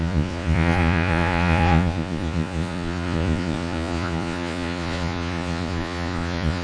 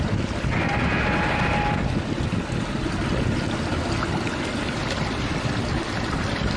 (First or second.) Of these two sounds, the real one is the second